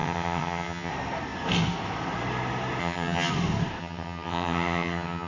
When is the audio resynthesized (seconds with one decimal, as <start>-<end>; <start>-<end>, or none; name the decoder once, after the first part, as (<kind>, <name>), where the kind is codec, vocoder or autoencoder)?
0.0-0.9 (vocoder, HiFi-GAN); 2.8-3.3; 3.8-5.3